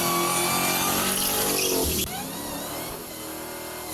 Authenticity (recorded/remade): recorded